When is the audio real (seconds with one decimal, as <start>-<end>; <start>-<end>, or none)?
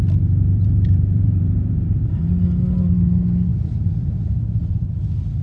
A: 0.0-0.5; 2.2-3.5; 4.3-5.4